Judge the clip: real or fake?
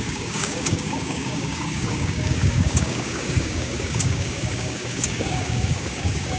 fake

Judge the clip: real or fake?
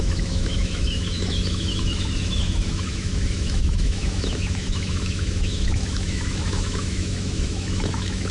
fake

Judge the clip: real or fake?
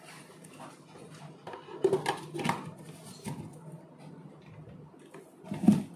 real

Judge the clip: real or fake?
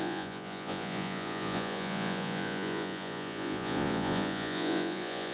fake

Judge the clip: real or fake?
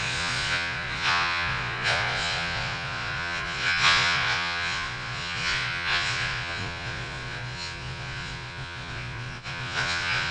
fake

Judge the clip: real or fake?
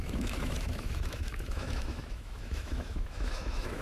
fake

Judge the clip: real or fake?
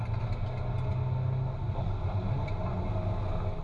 real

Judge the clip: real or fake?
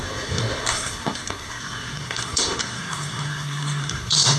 fake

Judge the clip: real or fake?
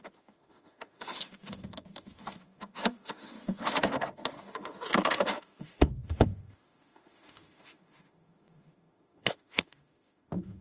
fake